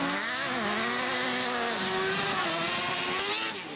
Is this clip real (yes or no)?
yes